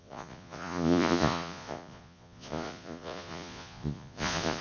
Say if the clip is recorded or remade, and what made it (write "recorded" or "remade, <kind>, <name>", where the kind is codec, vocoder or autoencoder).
remade, vocoder, Vocos